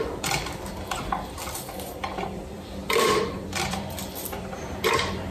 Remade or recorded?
remade